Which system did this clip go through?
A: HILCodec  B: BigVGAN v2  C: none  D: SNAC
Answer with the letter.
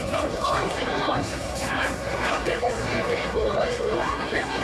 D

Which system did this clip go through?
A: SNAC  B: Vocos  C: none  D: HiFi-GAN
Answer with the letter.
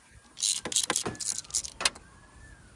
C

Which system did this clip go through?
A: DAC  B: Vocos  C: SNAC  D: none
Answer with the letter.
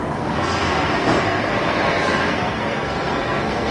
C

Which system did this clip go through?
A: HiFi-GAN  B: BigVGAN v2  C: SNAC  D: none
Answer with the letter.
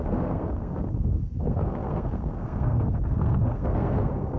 C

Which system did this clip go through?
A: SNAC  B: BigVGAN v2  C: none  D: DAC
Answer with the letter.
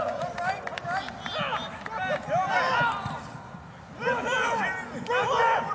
C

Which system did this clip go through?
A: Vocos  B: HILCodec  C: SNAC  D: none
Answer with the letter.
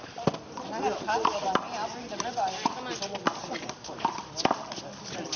D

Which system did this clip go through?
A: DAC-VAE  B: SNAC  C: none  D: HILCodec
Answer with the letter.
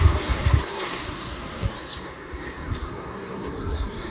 B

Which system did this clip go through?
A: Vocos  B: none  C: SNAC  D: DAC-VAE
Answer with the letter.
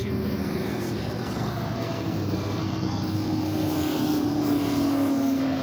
C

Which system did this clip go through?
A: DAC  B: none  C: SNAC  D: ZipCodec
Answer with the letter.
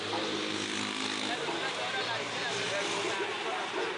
B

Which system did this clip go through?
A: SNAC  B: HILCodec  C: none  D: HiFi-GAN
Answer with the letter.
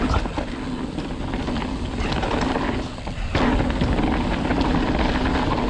C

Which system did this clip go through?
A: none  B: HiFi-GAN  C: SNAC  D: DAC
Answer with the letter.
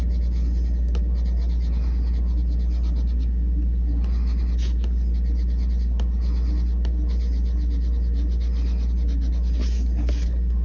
A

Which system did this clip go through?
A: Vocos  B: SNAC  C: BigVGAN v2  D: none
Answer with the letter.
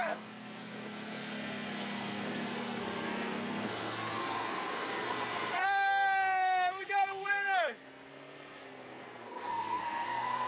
B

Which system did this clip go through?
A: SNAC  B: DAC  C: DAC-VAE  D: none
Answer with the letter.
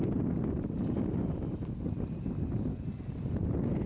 D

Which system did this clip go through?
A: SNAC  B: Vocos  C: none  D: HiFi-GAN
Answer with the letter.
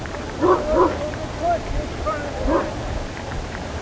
C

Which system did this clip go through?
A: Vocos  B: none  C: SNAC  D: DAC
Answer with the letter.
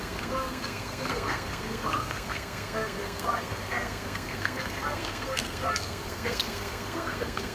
C